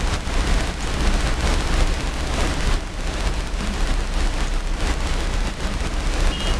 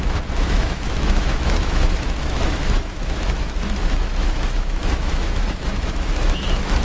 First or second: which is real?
first